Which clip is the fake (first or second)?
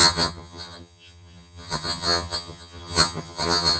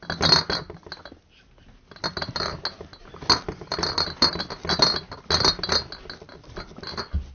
first